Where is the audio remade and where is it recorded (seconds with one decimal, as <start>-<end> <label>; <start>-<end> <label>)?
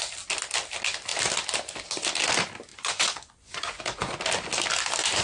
0.0-2.7 recorded; 2.7-4.2 remade; 4.2-5.2 recorded